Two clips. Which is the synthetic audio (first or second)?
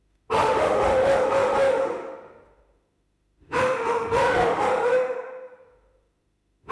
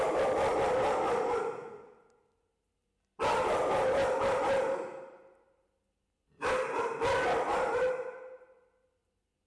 first